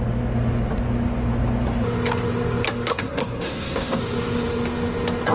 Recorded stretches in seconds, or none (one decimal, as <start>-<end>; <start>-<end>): 0.0-2.9; 4.0-5.3